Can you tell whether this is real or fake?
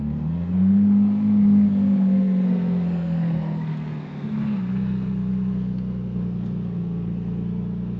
fake